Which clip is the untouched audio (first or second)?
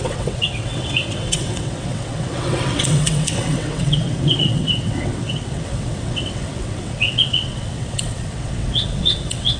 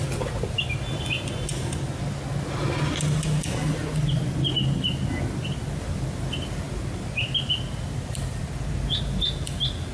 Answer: second